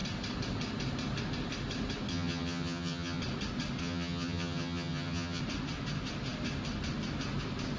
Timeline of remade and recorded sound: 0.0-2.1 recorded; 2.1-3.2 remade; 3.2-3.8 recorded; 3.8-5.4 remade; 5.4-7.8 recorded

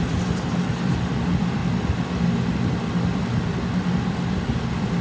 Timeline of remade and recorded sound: 0.0-1.6 remade; 1.6-3.8 recorded; 3.8-5.0 remade

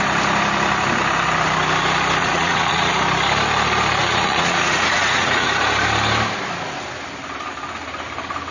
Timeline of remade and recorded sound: 0.0-2.2 recorded; 2.2-2.9 remade; 2.9-4.0 recorded; 4.0-5.5 remade; 5.5-8.5 recorded

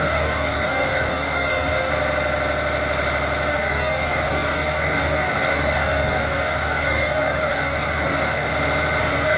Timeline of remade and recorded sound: 0.0-1.9 remade; 1.9-3.5 recorded; 3.5-8.5 remade; 8.5-9.0 recorded; 9.0-9.4 remade

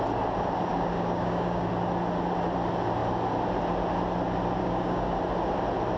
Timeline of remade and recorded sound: 0.0-0.7 recorded; 0.7-1.7 remade; 1.7-4.6 recorded; 4.6-5.2 remade; 5.2-6.0 recorded